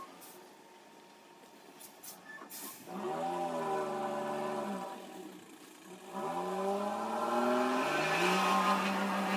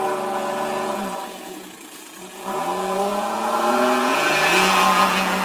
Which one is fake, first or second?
second